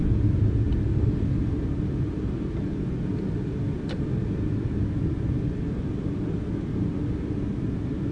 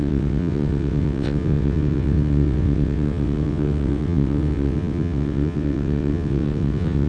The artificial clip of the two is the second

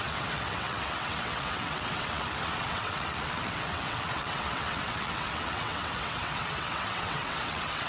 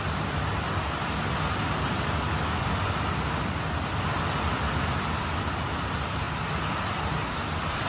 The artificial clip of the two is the first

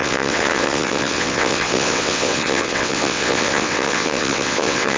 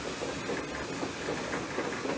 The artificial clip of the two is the first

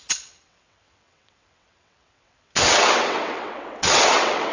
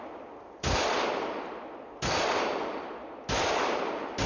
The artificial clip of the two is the first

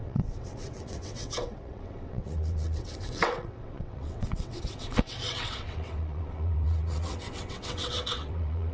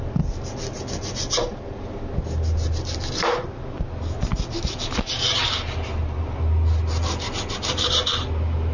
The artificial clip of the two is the first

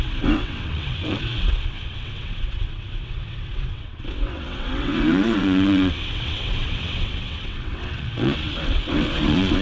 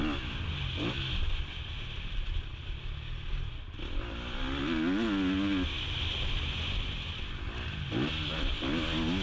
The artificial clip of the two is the first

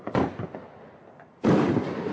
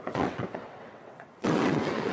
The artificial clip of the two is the second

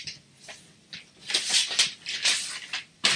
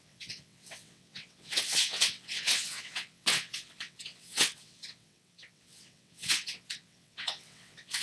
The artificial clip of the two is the second